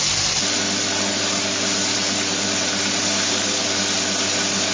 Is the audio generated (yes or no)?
no